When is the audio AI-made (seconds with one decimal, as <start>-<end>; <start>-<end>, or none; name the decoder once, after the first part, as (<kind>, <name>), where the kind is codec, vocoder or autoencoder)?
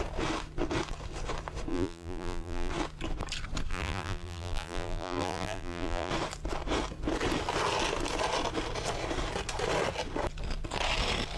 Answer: 1.7-2.7 (vocoder, BigVGAN v2); 3.7-6.1